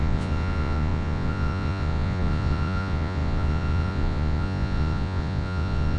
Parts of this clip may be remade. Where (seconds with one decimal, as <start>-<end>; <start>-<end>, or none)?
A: 0.0-6.0